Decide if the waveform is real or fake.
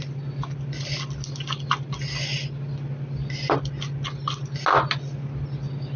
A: real